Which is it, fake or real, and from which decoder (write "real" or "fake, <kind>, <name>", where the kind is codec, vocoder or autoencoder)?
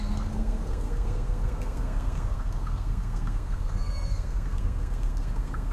fake, codec, SNAC